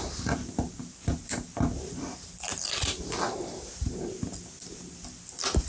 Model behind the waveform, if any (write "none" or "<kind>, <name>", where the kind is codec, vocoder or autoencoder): none